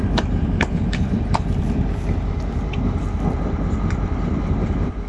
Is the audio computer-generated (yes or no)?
yes